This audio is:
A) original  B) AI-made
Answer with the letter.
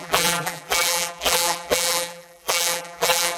B